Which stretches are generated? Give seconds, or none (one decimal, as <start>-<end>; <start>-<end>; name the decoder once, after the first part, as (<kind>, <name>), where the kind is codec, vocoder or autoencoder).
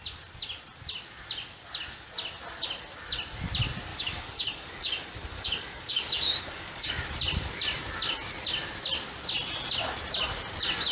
3.9-6.9 (codec, DAC)